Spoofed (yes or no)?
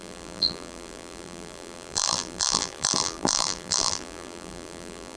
yes